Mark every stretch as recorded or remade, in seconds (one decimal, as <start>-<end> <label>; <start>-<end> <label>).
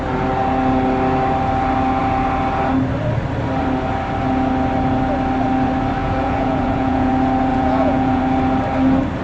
0.0-6.0 recorded; 6.0-7.1 remade; 7.1-7.5 recorded; 7.5-8.2 remade; 8.2-9.2 recorded